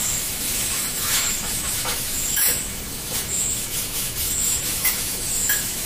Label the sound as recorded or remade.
remade